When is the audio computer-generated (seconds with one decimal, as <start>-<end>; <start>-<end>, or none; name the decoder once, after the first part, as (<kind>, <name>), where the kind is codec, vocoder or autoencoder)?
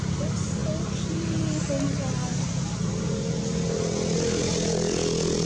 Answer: none